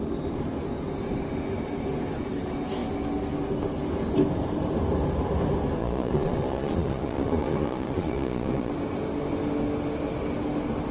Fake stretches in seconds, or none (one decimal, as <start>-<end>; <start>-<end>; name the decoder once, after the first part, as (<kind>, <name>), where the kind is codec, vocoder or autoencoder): 5.8-8.7 (vocoder, Vocos)